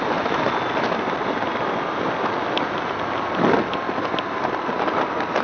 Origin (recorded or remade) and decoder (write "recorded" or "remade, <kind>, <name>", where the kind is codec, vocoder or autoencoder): recorded